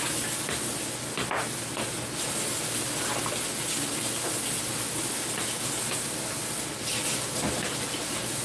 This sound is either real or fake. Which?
real